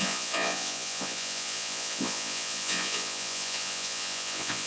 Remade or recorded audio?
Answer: remade